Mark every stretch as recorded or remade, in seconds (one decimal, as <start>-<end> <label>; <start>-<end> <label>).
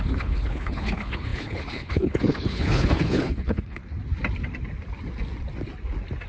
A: 0.0-3.8 remade; 3.8-6.3 recorded